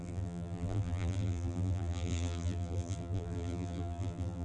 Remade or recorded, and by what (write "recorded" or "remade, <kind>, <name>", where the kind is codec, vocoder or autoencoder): remade, vocoder, BigVGAN v2